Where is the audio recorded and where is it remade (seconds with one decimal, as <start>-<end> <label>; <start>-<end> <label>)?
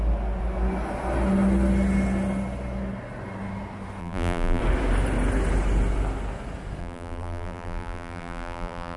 0.0-4.0 recorded; 4.0-4.6 remade; 4.6-6.8 recorded; 6.8-9.0 remade